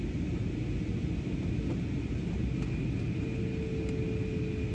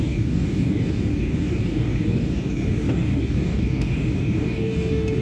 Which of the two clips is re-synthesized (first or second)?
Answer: second